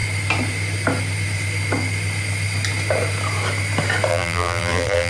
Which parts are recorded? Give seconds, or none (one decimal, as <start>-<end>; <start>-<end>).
0.0-4.1